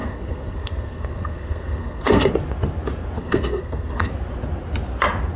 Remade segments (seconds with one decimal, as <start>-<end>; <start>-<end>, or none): 0.0-2.3; 3.2-4.1